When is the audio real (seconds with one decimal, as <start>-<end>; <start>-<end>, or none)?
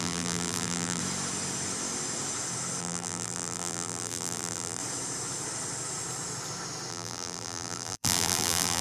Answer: 1.0-2.8; 4.8-6.9